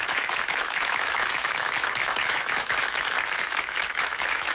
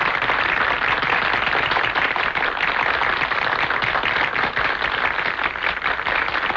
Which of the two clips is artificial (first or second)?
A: first